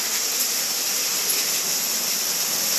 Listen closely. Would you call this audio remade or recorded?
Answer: recorded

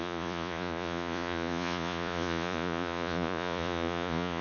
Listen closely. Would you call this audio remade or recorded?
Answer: remade